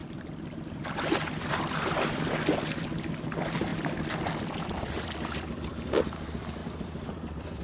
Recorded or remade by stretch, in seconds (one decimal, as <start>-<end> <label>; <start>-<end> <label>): 0.0-1.7 remade; 1.7-3.7 recorded; 3.7-5.1 remade; 5.1-6.6 recorded; 6.6-7.6 remade